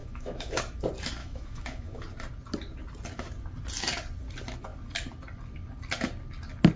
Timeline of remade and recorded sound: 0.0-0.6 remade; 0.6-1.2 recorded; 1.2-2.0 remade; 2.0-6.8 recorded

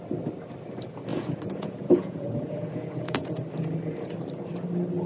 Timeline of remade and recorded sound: 0.0-1.1 recorded; 1.1-3.3 remade; 3.3-5.1 recorded

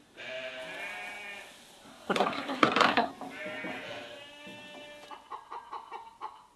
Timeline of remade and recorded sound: 0.0-1.9 recorded; 1.9-3.1 remade; 3.1-6.6 recorded

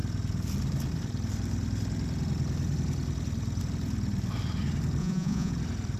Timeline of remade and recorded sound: 0.0-5.0 recorded; 5.0-5.5 remade; 5.5-6.0 recorded